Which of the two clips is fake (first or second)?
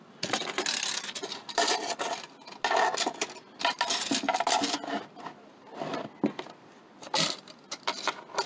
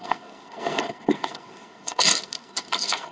second